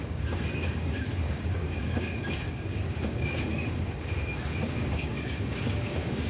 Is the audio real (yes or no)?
no